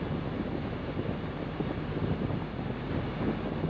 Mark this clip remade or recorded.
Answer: recorded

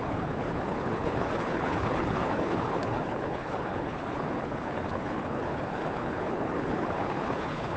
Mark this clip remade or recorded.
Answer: remade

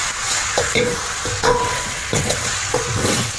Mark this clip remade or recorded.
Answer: remade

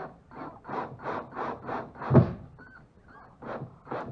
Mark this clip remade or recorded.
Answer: recorded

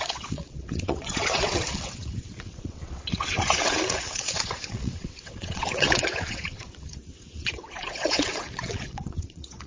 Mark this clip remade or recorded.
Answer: remade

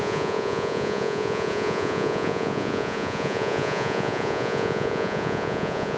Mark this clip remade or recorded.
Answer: remade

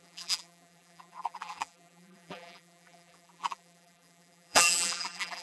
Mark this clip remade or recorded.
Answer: remade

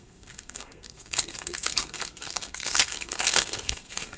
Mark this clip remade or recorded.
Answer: remade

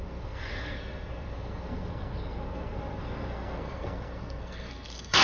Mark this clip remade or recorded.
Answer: remade